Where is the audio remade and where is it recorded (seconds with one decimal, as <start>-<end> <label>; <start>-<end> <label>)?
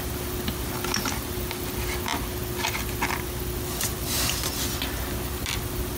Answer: 0.0-6.0 recorded